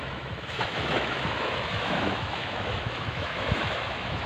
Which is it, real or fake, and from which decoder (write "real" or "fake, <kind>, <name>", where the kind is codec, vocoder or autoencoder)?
fake, autoencoder, DAC-VAE